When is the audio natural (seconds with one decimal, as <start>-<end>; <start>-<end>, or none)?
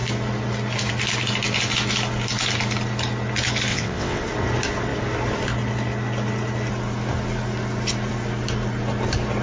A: 0.0-3.7; 4.2-9.4